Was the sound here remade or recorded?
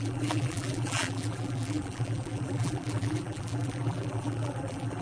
remade